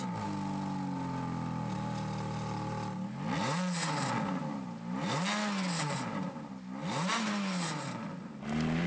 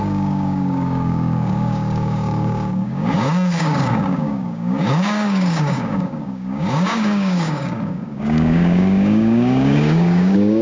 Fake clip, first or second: second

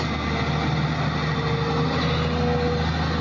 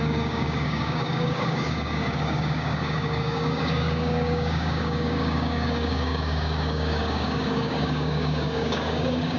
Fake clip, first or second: second